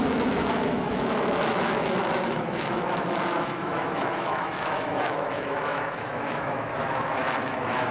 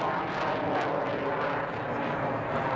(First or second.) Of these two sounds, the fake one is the first